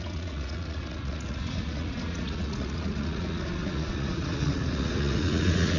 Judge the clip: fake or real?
fake